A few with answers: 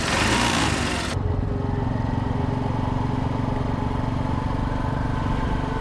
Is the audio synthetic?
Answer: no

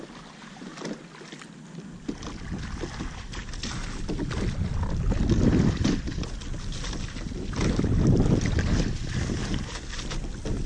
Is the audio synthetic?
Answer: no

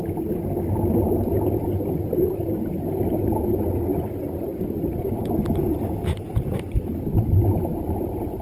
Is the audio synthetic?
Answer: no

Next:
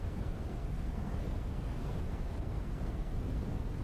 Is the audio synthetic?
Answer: yes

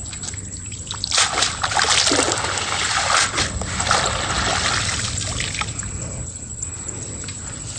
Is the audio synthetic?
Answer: no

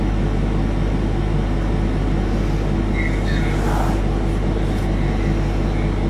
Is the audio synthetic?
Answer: no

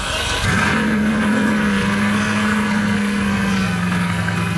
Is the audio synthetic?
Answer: yes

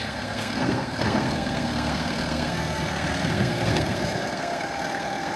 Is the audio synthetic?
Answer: yes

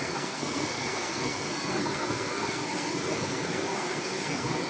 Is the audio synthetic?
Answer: yes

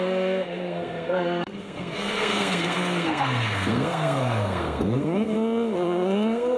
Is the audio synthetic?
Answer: yes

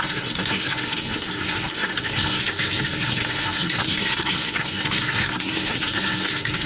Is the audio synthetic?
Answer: yes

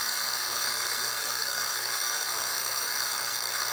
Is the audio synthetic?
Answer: yes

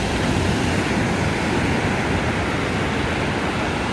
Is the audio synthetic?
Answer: no